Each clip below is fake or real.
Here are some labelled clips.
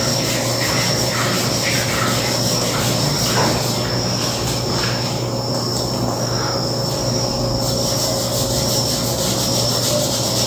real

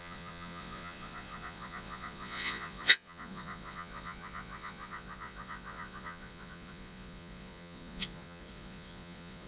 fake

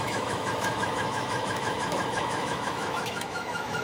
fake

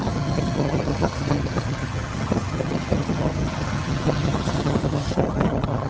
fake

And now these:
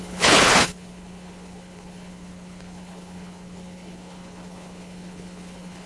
fake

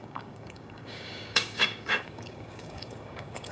fake